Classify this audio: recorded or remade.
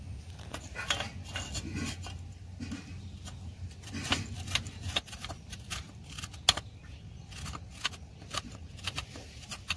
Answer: recorded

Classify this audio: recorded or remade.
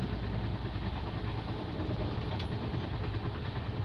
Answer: recorded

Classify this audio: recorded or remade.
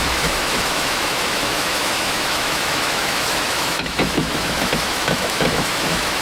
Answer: remade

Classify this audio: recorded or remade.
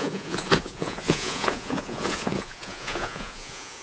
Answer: remade